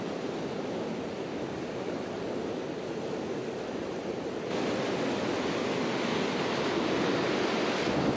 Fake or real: real